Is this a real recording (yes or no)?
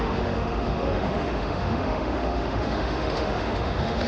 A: no